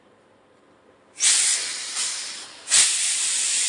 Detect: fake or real fake